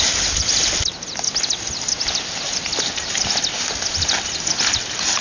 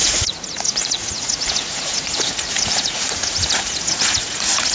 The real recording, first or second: first